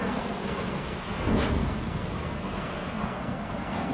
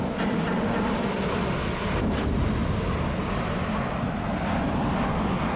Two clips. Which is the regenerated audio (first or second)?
first